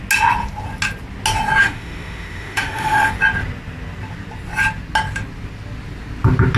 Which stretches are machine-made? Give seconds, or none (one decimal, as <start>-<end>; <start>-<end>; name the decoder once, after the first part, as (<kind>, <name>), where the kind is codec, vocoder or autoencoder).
1.6-3.1 (autoencoder, DAC-VAE)